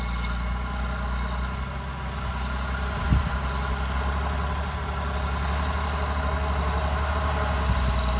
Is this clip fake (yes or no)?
no